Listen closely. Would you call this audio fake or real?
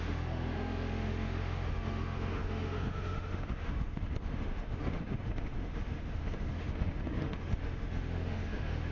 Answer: fake